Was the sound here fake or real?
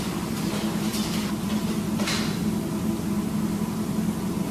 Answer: real